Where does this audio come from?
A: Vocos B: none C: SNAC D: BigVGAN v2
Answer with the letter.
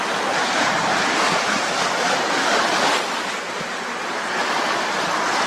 B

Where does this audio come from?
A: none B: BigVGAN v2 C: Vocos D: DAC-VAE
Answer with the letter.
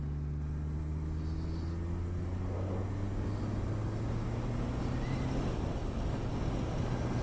A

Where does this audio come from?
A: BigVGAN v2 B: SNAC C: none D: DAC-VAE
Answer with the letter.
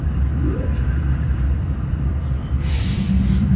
A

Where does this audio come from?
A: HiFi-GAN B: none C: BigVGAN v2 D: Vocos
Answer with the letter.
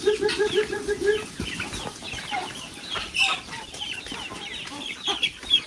C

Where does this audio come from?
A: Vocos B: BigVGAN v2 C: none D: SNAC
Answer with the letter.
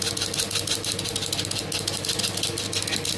C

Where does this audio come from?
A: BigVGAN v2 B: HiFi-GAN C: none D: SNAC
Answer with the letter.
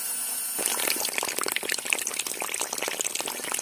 C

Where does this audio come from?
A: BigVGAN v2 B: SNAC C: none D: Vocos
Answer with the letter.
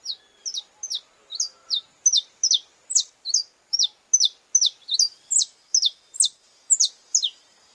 C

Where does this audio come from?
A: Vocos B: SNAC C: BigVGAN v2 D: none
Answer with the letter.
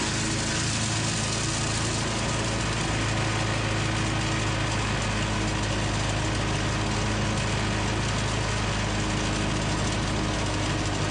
D